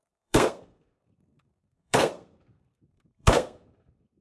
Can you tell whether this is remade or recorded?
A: remade